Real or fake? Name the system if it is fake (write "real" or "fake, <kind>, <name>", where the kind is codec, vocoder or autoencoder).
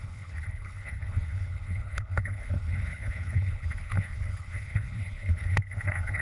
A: fake, codec, HILCodec